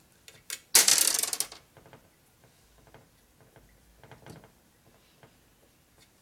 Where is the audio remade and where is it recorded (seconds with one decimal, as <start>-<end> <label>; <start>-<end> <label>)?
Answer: 0.0-6.2 recorded